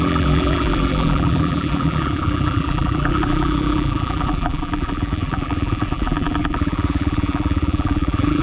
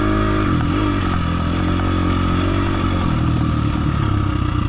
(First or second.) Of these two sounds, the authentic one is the second